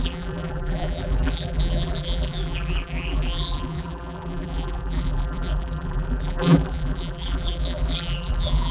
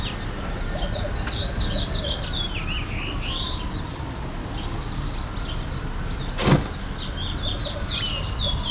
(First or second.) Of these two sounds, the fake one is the first